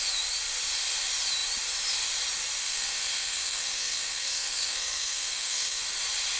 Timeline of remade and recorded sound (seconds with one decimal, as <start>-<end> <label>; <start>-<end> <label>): 0.0-2.6 recorded; 2.6-5.8 remade; 5.8-6.4 recorded